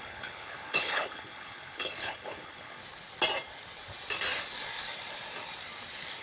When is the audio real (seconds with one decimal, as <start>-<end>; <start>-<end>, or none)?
2.8-6.2